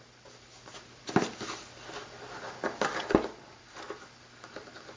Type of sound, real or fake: real